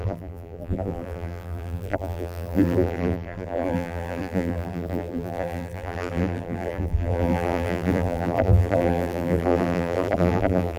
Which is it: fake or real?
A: fake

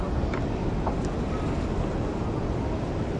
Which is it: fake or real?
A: real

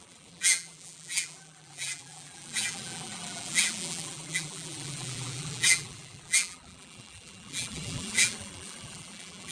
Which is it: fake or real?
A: fake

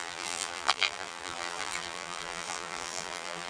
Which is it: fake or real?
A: fake